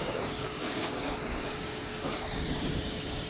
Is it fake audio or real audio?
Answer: fake